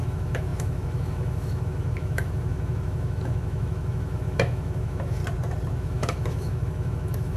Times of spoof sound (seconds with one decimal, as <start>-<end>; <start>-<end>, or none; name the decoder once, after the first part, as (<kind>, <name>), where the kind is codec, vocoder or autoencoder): 0.0-5.2 (autoencoder, DAC-VAE); 5.8-7.4